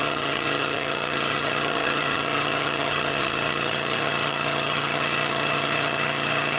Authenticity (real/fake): fake